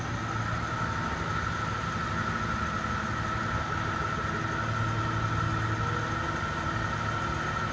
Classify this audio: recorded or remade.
recorded